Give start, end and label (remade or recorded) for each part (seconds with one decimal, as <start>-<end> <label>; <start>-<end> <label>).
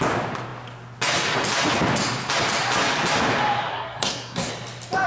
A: 0.0-3.7 recorded; 3.7-4.5 remade; 4.5-5.1 recorded